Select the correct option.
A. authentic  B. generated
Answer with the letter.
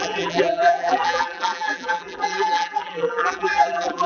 B